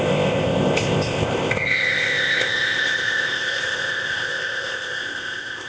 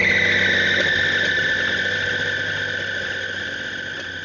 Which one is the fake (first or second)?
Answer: first